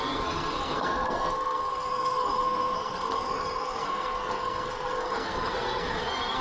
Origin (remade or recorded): remade